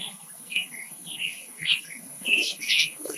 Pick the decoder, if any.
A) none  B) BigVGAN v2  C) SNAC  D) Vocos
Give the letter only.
C